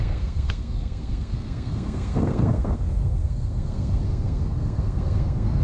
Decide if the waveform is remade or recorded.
remade